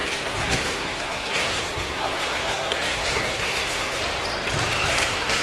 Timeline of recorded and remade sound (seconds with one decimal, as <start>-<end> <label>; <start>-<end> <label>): 0.0-4.0 remade; 4.0-4.9 recorded; 4.9-5.4 remade